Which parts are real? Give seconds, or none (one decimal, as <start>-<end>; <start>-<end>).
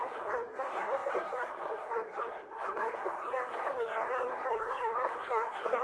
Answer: none